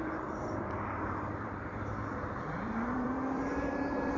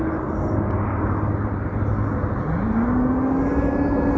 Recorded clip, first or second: second